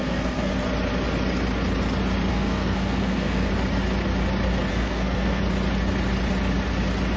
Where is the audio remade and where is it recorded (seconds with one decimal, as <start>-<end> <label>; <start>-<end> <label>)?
0.0-0.5 remade; 0.5-2.3 recorded; 2.3-3.5 remade; 3.5-4.7 recorded; 4.7-5.4 remade; 5.4-7.2 recorded